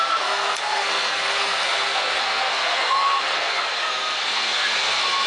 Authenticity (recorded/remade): remade